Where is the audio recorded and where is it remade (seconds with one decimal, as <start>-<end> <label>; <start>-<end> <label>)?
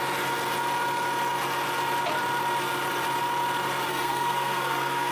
0.0-3.9 recorded; 3.9-5.1 remade